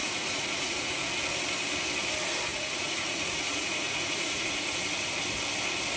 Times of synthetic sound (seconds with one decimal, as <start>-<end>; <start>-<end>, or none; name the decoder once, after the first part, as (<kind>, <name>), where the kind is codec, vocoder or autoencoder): 0.0-1.2 (vocoder, Vocos); 2.5-4.5